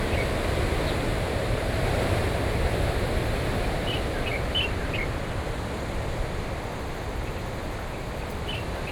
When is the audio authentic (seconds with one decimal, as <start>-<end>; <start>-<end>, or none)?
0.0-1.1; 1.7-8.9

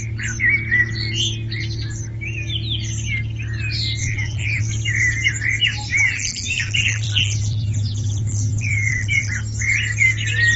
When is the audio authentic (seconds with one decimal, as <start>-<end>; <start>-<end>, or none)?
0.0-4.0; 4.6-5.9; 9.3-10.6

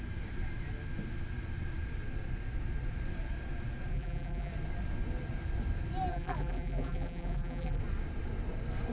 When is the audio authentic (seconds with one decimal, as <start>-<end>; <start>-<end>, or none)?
0.0-3.9; 4.5-6.1; 7.8-8.9

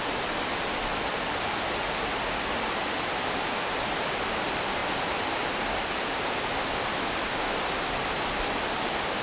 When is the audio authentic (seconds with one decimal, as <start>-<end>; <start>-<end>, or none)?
0.9-3.2; 4.8-8.2

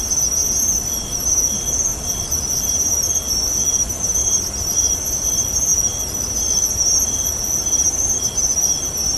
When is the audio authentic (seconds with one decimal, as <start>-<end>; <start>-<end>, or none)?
0.0-4.2; 5.1-9.2